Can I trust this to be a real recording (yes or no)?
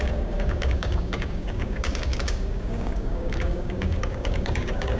no